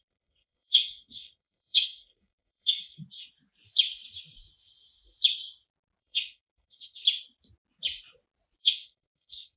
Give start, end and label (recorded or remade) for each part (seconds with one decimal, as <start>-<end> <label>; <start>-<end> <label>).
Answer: 0.0-3.0 remade; 3.0-6.0 recorded; 6.0-7.0 remade; 7.0-8.6 recorded; 8.6-9.6 remade